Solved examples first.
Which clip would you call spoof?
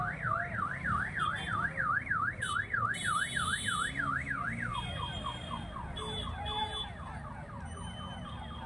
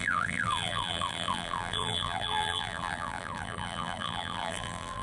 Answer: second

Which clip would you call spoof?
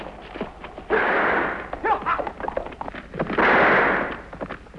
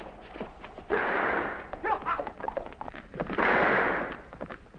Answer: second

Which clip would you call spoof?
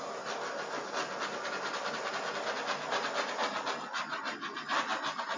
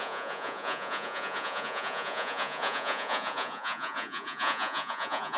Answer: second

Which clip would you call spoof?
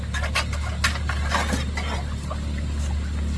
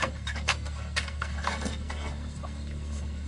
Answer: second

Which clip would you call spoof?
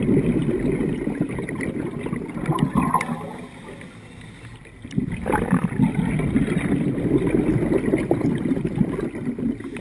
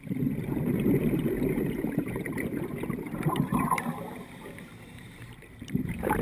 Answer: second